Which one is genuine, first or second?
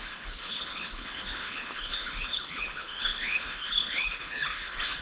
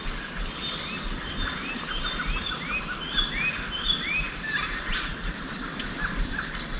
second